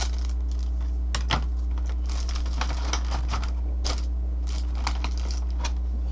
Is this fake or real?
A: real